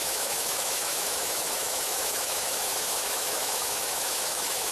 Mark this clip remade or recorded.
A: remade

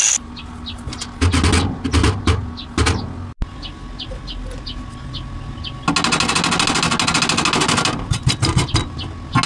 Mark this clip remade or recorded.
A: recorded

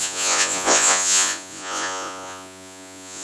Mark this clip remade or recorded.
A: remade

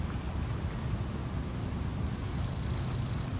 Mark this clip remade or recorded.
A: recorded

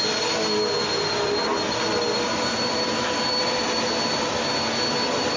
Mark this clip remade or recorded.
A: recorded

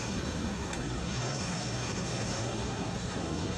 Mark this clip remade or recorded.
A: remade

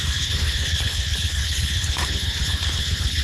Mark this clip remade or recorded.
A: remade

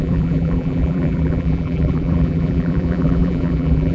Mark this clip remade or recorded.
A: remade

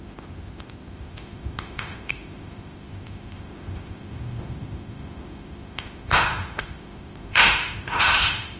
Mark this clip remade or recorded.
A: remade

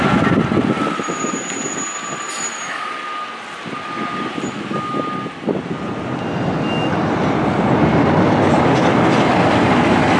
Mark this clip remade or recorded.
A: recorded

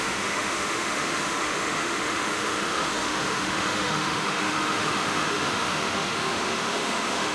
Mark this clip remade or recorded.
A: remade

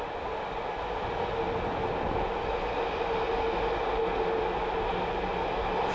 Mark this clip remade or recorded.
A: recorded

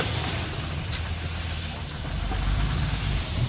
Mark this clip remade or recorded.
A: remade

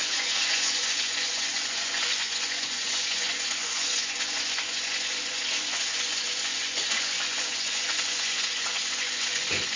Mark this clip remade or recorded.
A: remade